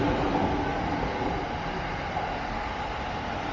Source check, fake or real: real